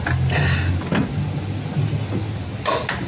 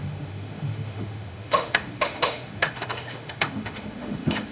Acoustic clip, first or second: first